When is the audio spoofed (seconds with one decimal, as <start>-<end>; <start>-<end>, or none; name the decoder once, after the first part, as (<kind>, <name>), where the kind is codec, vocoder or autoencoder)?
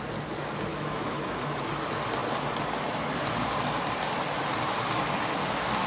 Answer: 0.7-1.6 (autoencoder, DAC-VAE)